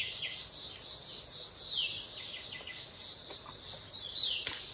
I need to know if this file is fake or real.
real